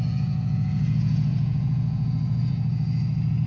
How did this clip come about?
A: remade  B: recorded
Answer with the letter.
A